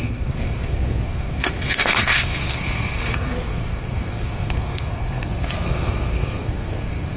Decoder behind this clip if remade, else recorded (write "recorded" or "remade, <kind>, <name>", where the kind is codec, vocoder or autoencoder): remade, codec, SNAC